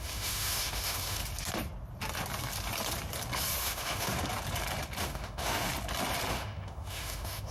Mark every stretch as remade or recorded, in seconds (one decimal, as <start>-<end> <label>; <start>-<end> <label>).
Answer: 0.0-1.2 remade; 1.2-3.6 recorded; 3.6-4.1 remade; 4.1-5.0 recorded; 5.0-5.7 remade; 5.7-6.3 recorded; 6.3-7.5 remade